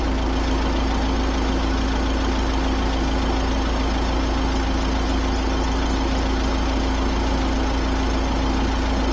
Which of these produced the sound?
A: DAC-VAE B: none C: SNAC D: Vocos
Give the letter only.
B